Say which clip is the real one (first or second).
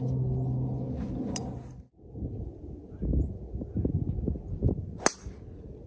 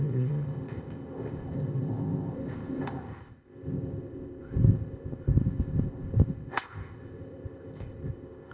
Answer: first